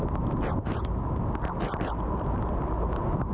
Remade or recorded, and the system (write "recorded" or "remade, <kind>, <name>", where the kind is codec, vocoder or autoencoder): recorded